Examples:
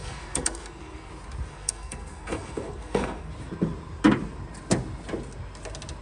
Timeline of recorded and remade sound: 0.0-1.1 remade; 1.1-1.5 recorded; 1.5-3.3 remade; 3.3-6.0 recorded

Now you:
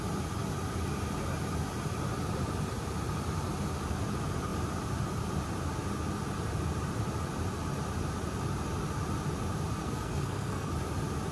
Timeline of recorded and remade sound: 0.0-9.8 recorded; 9.8-10.7 remade; 10.7-11.3 recorded

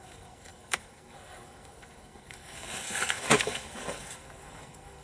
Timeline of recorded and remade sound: 0.0-5.0 remade